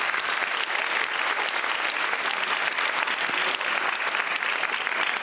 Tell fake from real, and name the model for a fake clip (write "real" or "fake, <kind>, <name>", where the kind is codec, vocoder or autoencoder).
real